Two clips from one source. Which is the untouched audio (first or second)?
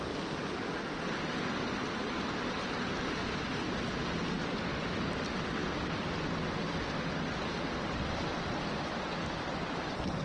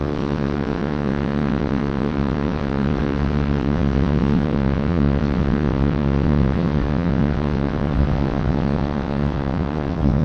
first